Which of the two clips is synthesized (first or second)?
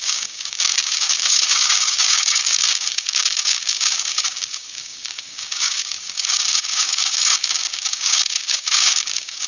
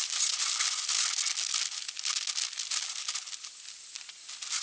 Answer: first